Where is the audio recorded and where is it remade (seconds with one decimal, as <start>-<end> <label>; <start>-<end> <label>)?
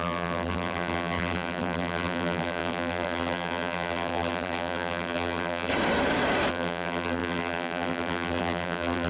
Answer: 0.0-5.7 remade; 5.7-6.5 recorded; 6.5-9.1 remade